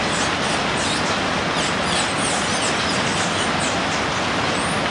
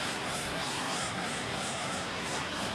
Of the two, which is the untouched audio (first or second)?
first